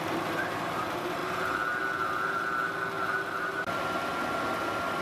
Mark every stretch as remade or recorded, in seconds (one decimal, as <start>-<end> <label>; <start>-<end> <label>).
0.0-5.0 recorded